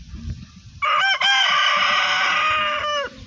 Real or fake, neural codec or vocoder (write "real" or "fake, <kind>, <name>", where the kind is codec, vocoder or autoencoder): real